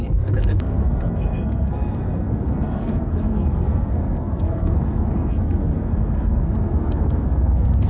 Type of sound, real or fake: fake